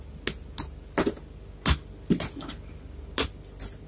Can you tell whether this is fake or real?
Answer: real